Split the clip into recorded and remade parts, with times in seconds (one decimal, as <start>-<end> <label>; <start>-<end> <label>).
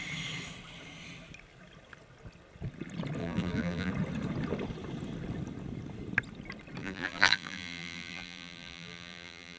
0.0-3.2 recorded; 3.2-3.9 remade; 3.9-6.8 recorded; 6.8-9.6 remade